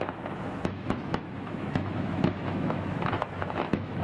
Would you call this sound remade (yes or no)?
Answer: yes